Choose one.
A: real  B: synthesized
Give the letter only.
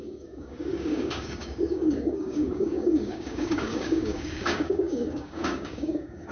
B